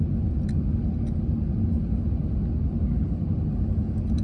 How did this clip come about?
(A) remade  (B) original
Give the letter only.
B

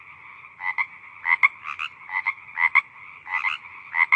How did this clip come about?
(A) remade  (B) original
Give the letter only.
B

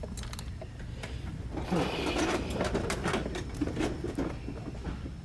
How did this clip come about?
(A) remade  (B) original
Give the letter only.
B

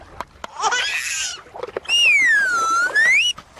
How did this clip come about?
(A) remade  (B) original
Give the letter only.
B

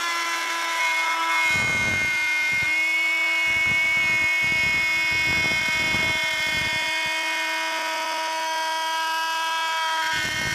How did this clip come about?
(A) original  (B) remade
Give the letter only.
A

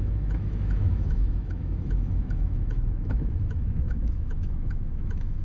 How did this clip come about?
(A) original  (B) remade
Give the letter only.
B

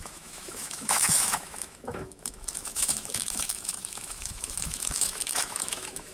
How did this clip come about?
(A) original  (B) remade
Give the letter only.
B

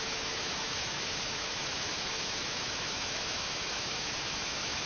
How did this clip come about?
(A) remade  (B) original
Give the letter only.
A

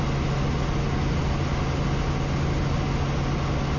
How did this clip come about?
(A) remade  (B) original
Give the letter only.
B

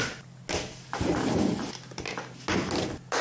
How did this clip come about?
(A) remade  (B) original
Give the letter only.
B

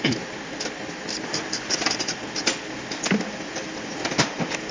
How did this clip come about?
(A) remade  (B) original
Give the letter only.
B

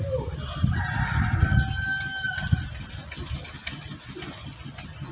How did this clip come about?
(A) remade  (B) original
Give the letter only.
B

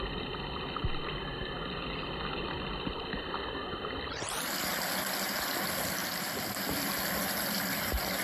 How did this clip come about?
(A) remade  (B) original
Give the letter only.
B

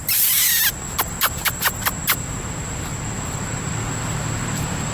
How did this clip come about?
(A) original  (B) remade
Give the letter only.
A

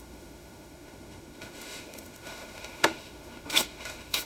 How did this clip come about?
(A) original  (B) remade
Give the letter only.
B